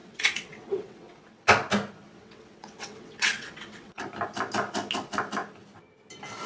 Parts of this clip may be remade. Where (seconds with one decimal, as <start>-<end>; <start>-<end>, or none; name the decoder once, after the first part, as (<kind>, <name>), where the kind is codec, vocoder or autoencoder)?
0.0-1.4 (vocoder, WaveNeXt); 2.2-4.0